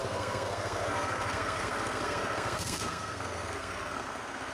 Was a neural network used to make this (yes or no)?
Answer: yes